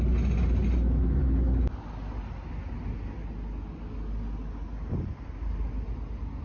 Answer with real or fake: real